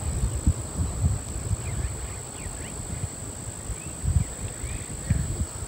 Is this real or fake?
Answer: real